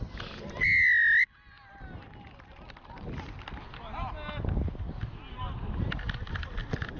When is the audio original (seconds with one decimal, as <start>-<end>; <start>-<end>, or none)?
0.0-7.0